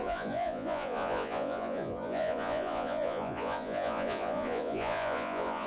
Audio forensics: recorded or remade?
remade